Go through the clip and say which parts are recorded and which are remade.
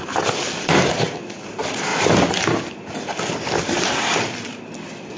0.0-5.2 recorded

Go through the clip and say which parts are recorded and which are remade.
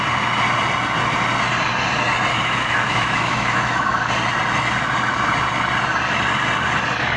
0.0-2.3 recorded; 2.3-4.1 remade; 4.1-7.2 recorded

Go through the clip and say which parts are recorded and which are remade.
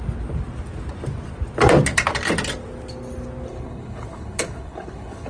0.0-3.5 recorded; 3.5-5.3 remade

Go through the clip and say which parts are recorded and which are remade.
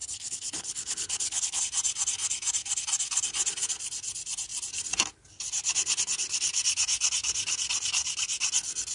0.0-1.6 remade; 1.6-8.9 recorded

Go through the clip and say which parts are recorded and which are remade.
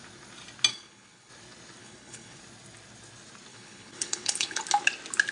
0.0-0.7 recorded; 0.7-1.3 remade; 1.3-1.8 recorded; 1.8-2.4 remade; 2.4-3.5 recorded; 3.5-4.6 remade; 4.6-5.3 recorded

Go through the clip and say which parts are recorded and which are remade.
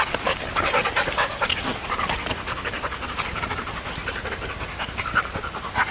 0.0-1.7 recorded; 1.7-3.5 remade; 3.5-4.0 recorded; 4.0-5.9 remade